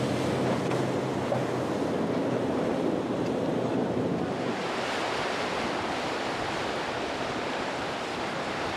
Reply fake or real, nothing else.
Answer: real